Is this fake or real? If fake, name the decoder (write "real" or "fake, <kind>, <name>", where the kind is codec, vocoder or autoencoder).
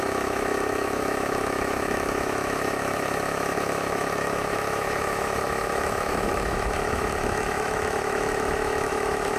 fake, autoencoder, DAC-VAE